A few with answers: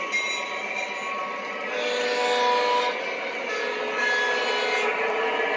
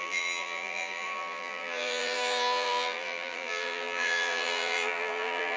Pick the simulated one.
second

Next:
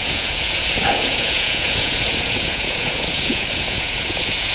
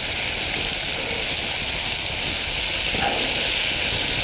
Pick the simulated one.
first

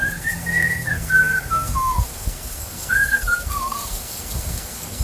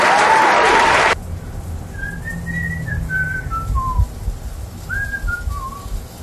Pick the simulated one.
first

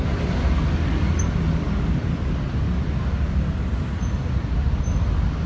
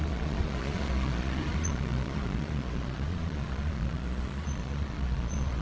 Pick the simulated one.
second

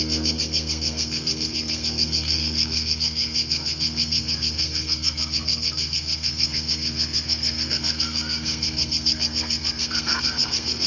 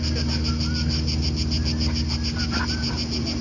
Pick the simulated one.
first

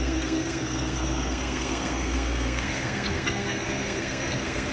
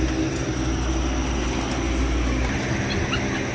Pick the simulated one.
first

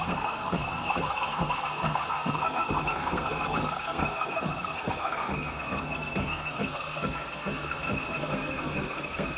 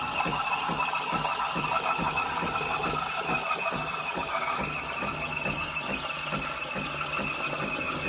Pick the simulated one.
first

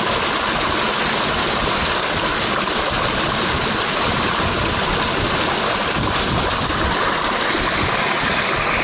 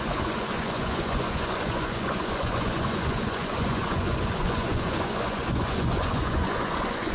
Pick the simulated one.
second